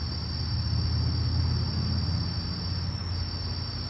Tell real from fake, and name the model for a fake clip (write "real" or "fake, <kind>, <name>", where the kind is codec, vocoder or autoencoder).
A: real